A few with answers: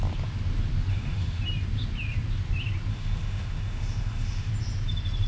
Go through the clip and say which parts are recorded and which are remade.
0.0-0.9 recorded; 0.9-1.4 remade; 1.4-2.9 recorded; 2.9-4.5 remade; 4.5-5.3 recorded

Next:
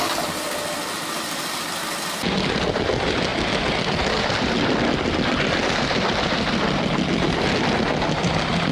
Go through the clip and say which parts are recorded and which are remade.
0.0-8.7 recorded